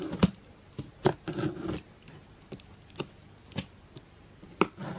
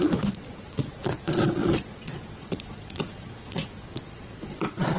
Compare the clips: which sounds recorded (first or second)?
first